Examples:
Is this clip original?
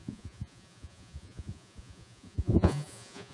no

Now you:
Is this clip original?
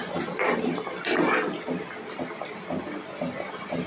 yes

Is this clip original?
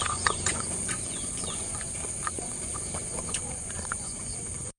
no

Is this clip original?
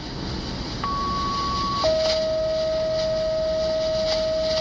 yes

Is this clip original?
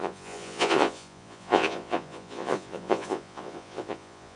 no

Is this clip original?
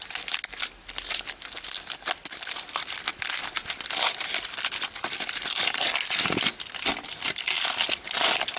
yes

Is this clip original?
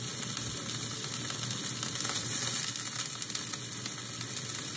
yes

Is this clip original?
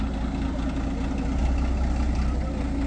yes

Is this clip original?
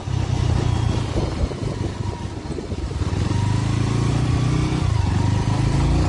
yes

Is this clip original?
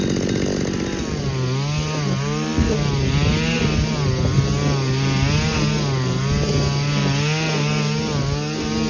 yes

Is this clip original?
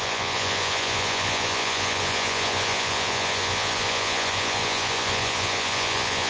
no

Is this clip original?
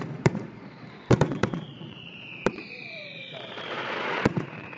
no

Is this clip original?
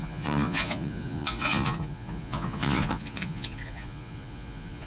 no